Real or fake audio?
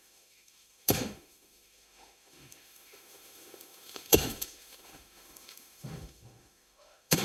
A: fake